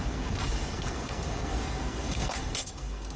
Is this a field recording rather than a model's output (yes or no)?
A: no